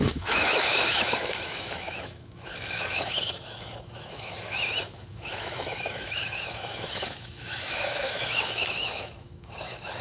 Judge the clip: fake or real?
fake